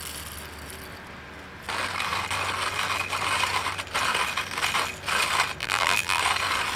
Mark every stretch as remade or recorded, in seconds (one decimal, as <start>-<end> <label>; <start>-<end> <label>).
0.0-5.6 recorded; 5.6-6.2 remade; 6.2-6.8 recorded